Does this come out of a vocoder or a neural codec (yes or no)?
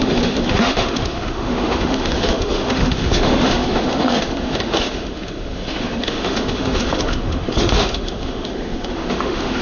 yes